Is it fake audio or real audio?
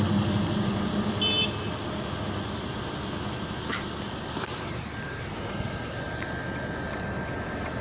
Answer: real